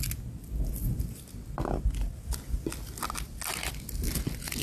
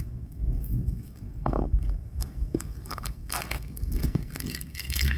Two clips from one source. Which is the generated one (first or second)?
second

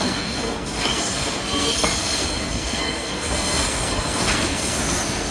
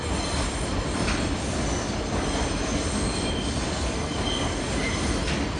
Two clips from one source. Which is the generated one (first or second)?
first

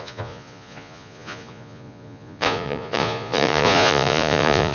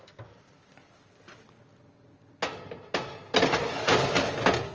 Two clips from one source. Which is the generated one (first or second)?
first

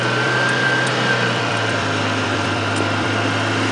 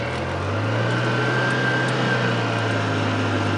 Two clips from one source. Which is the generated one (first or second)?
first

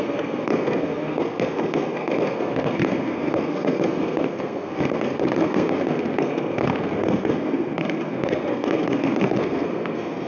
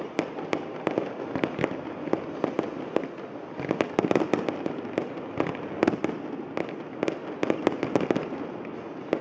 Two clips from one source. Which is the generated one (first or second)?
first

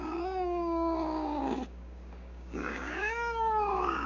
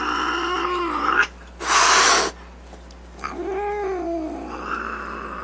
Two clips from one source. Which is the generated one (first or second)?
first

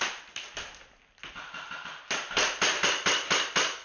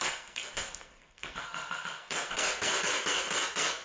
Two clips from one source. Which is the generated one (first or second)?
second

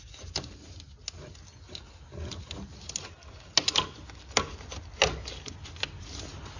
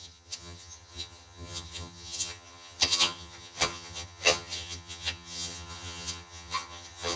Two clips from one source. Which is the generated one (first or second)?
second